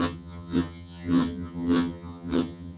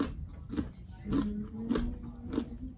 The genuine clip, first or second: second